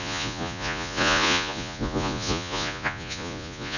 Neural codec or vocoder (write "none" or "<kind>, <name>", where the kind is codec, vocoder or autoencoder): vocoder, Vocos